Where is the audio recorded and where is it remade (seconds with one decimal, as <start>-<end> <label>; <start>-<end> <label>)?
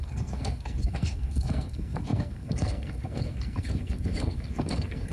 0.0-5.1 remade